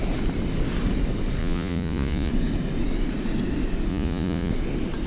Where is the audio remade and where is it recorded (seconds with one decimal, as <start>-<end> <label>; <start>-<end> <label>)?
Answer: 0.0-1.4 recorded; 1.4-2.3 remade; 2.3-3.9 recorded; 3.9-4.5 remade; 4.5-5.1 recorded